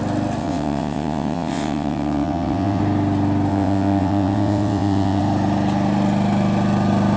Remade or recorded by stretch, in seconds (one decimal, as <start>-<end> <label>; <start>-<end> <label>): 0.0-0.4 recorded; 0.4-2.8 remade; 2.8-3.5 recorded; 3.5-5.2 remade; 5.2-7.2 recorded